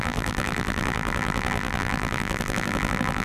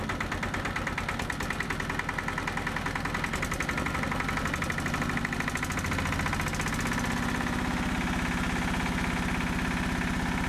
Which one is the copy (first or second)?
first